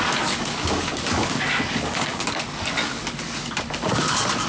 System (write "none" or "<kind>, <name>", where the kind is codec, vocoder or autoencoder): codec, DAC